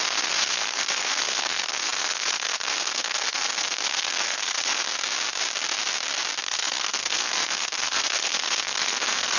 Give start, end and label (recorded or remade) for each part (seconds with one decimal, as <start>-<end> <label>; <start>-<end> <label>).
0.0-4.8 remade; 4.8-6.4 recorded; 6.4-9.4 remade